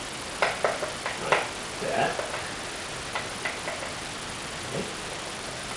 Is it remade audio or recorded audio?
recorded